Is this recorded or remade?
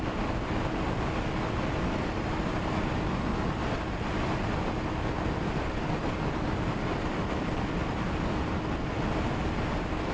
recorded